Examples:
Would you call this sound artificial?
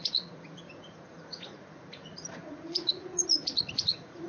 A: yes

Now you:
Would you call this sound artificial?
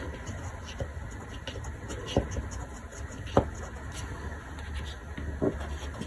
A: no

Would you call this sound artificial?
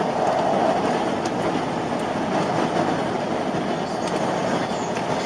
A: no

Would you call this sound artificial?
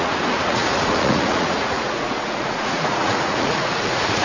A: yes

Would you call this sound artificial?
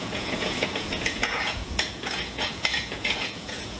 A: yes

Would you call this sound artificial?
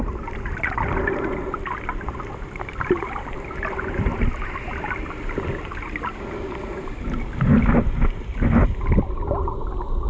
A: no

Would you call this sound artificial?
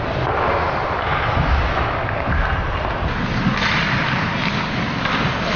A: no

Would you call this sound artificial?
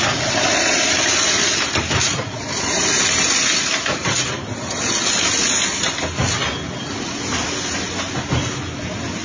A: no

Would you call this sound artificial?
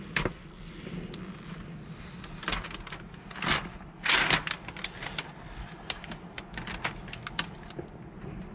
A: no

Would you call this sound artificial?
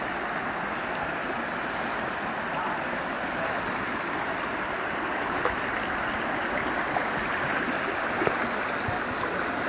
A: no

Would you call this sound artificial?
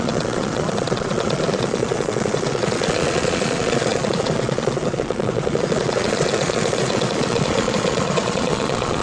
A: yes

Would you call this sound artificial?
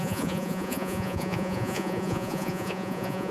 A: yes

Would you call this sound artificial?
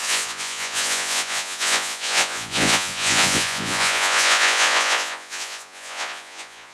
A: yes